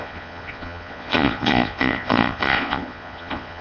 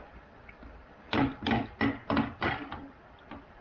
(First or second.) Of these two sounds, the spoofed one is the first